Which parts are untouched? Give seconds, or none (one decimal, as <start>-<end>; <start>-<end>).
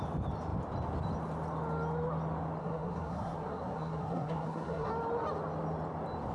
0.0-2.6; 4.9-6.3